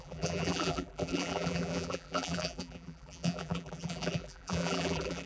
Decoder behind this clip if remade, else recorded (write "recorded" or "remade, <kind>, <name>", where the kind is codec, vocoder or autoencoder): remade, vocoder, BigVGAN v2